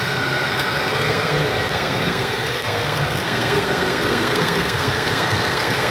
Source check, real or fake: fake